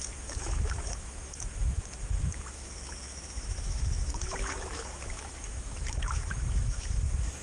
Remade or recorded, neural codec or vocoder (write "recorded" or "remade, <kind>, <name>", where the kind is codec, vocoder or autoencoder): remade, autoencoder, DAC-VAE